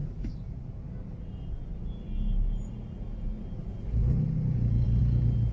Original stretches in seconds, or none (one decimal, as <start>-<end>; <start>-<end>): 0.8-3.6; 5.0-5.5